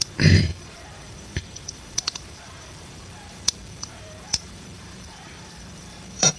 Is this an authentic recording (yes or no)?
no